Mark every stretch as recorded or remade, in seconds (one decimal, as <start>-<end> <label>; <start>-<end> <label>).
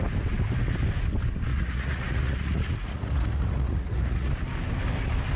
0.0-1.5 recorded; 1.5-4.3 remade; 4.3-5.4 recorded